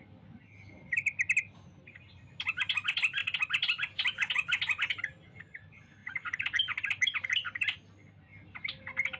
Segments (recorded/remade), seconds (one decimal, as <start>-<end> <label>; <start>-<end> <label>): 0.0-9.2 recorded